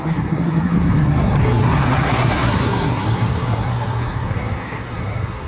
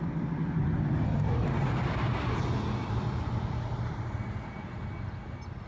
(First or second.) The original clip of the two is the second